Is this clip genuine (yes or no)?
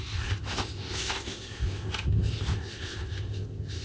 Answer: no